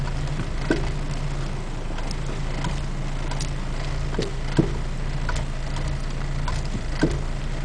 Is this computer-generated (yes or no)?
no